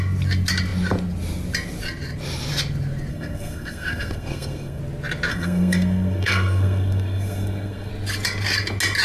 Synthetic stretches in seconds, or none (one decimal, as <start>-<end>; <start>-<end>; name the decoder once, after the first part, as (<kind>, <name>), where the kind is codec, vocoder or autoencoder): 3.1-4.8 (codec, SNAC); 5.3-7.9